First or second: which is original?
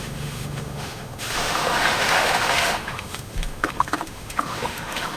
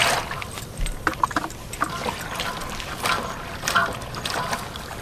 second